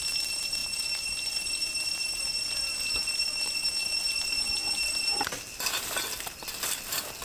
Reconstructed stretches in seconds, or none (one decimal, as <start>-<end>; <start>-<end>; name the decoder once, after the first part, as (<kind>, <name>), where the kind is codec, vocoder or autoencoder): none